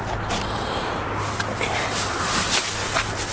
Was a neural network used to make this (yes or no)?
no